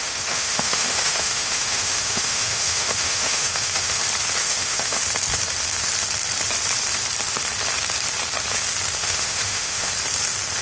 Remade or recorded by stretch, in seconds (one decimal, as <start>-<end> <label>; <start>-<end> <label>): 0.0-4.0 remade; 4.0-4.4 recorded; 4.4-5.0 remade; 5.0-9.0 recorded; 9.0-9.9 remade; 9.9-10.6 recorded